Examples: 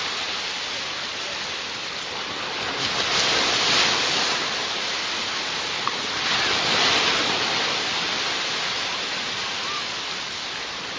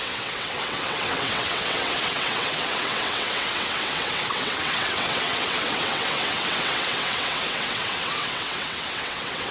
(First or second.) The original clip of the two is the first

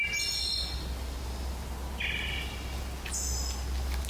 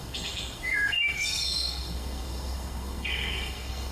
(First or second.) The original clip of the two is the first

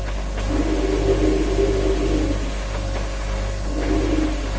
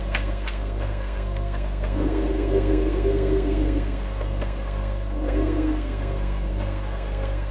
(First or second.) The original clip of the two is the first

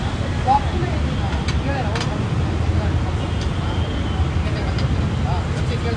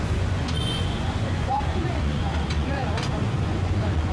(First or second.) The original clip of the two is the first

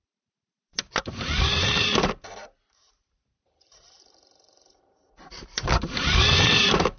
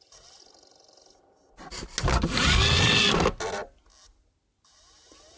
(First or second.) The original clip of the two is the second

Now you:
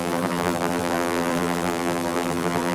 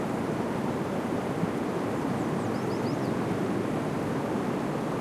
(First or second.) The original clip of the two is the second